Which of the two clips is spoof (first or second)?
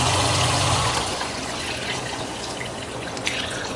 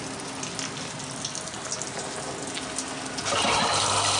first